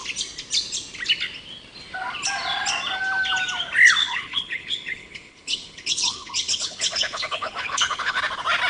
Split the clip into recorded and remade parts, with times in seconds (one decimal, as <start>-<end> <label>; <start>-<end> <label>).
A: 0.0-4.0 recorded; 4.0-8.2 remade; 8.2-8.7 recorded